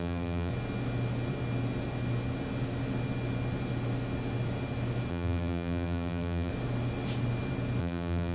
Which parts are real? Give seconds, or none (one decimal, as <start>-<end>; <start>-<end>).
0.5-5.1; 6.5-7.8